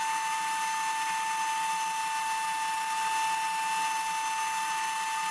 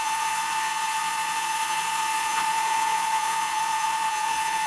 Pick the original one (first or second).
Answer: first